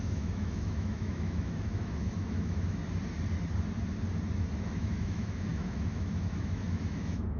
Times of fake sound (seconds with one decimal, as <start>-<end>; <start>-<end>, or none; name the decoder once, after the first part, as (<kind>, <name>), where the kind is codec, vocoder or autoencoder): 0.0-2.8 (autoencoder, DAC-VAE); 4.5-7.4